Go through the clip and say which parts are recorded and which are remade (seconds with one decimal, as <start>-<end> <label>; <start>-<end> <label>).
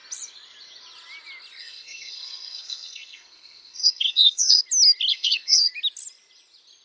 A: 0.0-1.6 recorded; 1.6-4.6 remade; 4.6-5.1 recorded; 5.1-5.7 remade; 5.7-6.8 recorded